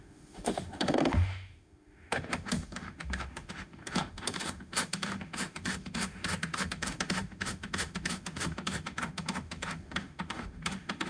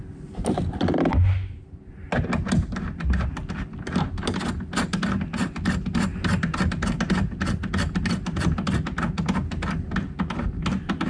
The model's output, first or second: first